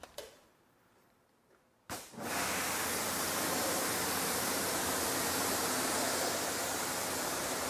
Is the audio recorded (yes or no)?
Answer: no